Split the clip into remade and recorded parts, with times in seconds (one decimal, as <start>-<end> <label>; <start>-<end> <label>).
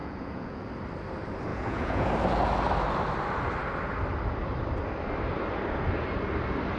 0.0-0.7 remade; 0.7-1.5 recorded; 1.5-2.1 remade; 2.1-6.8 recorded